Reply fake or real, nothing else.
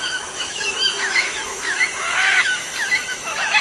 fake